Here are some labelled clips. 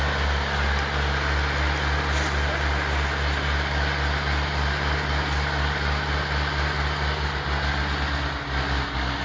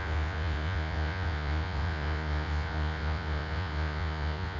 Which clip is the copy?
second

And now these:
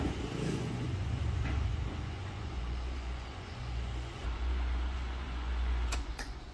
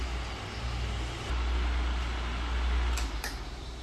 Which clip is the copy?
first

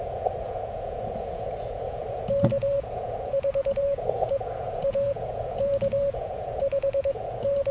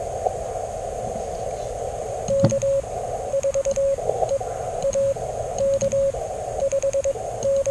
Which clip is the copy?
first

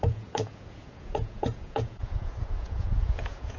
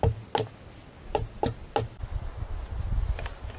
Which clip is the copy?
first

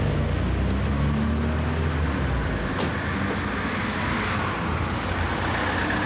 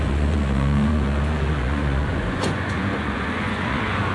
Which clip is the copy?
second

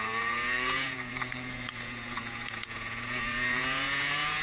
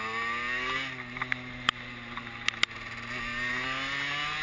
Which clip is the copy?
first